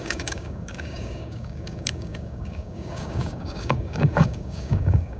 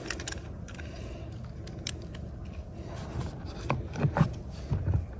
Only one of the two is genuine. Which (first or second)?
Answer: second